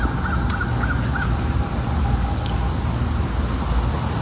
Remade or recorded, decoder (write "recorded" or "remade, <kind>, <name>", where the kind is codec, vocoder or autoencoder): recorded